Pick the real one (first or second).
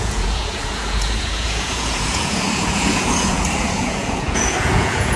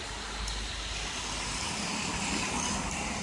second